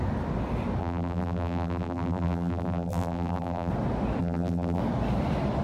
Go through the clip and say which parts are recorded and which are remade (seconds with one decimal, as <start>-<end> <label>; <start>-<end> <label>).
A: 0.0-0.8 recorded; 0.8-3.7 remade; 3.7-4.2 recorded; 4.2-4.8 remade; 4.8-5.6 recorded